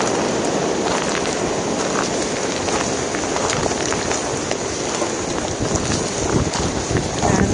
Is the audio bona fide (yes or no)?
yes